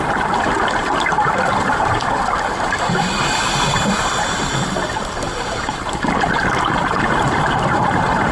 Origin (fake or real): fake